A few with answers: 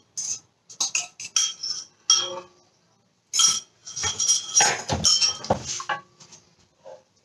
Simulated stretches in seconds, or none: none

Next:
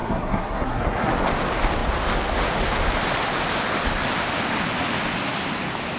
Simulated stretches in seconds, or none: 0.0-1.1 (codec, SNAC)

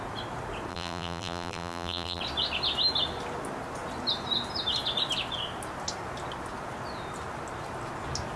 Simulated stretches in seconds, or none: 0.7-2.2 (vocoder, BigVGAN v2)